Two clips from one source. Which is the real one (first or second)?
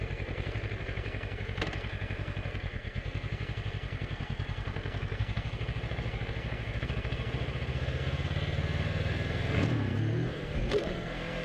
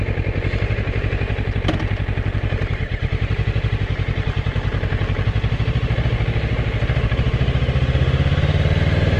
second